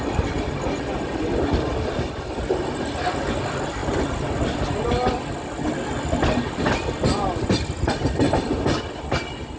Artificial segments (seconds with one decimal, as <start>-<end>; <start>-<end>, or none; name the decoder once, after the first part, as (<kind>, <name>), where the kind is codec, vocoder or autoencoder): none